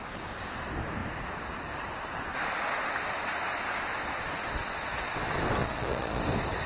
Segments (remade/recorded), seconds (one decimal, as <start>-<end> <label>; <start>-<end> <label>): 0.0-5.6 recorded; 5.6-6.2 remade; 6.2-6.7 recorded